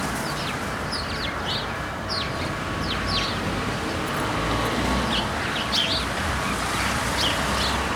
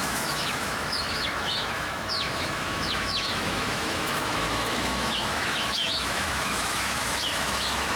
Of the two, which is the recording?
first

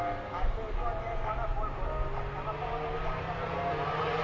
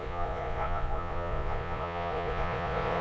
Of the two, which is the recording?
first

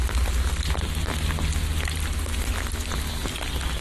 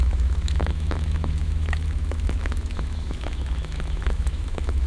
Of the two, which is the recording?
first